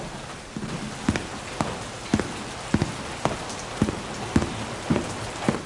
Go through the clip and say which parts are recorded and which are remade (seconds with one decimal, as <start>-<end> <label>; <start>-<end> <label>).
0.0-5.7 recorded